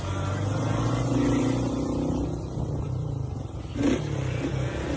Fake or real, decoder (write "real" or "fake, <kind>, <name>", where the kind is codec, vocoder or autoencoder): real